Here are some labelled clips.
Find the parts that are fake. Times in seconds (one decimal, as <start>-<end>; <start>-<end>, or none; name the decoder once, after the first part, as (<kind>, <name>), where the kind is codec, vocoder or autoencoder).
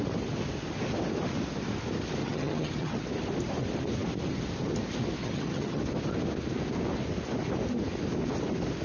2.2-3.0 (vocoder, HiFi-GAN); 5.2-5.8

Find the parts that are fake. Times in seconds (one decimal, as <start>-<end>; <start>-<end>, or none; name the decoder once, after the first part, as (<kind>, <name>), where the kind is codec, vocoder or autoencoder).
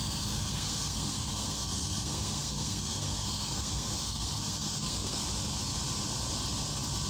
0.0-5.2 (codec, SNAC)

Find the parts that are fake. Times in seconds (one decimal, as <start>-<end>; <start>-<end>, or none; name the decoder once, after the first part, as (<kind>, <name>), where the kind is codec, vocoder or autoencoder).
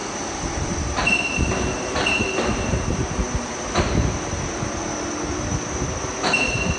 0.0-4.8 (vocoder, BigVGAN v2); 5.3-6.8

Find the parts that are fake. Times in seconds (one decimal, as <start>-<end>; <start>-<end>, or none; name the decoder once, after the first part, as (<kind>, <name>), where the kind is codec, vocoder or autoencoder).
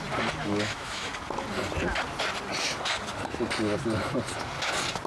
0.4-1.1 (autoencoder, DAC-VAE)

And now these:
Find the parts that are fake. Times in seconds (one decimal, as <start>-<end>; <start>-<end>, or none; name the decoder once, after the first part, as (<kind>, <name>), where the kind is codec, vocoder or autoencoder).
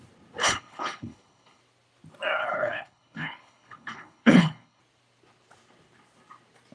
0.4-1.6 (codec, HILCodec); 2.4-4.8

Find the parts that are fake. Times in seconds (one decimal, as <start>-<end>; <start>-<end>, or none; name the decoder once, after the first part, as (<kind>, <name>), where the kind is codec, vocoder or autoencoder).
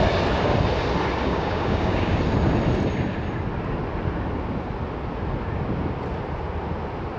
1.2-2.2 (codec, DAC)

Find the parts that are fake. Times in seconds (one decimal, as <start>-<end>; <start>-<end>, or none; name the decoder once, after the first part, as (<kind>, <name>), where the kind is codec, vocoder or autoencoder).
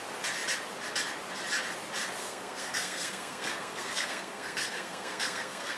2.2-5.8 (codec, SNAC)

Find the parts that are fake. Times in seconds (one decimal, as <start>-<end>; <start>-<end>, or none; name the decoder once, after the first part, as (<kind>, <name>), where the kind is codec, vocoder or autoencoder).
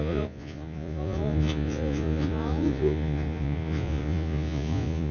0.0-5.1 (vocoder, Vocos)